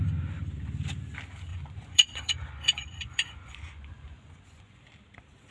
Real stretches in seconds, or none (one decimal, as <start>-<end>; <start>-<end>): 0.0-1.5; 4.8-5.5